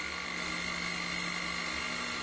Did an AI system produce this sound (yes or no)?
no